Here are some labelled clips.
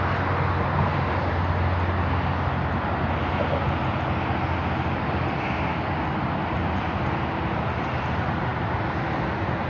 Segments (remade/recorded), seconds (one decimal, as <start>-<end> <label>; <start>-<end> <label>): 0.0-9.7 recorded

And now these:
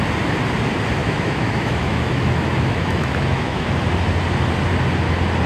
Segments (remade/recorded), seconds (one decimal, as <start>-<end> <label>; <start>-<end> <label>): 0.0-1.0 recorded; 1.0-3.7 remade; 3.7-5.5 recorded

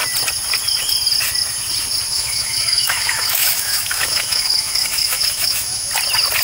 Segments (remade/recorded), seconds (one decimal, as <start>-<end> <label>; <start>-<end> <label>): 0.0-2.1 recorded; 2.1-5.9 remade; 5.9-6.4 recorded

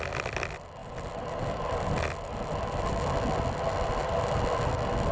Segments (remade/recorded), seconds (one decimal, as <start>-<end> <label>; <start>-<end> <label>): 0.0-5.1 recorded

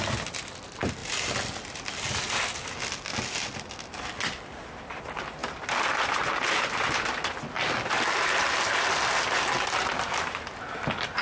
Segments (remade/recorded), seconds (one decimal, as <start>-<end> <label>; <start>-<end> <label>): 0.0-11.2 recorded

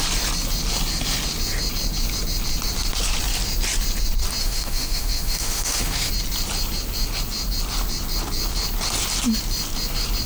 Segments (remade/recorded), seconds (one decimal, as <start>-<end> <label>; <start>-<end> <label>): 0.0-4.4 recorded; 4.4-6.1 remade; 6.1-10.3 recorded

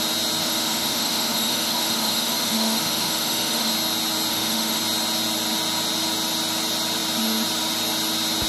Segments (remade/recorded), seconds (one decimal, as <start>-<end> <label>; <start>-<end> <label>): 0.0-0.4 recorded; 0.4-3.7 remade; 3.7-4.3 recorded; 4.3-4.8 remade; 4.8-8.5 recorded